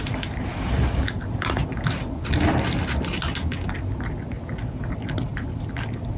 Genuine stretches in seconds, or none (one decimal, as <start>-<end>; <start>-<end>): 0.5-4.2